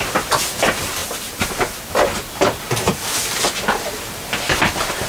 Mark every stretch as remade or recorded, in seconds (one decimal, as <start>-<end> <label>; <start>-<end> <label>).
0.0-5.1 recorded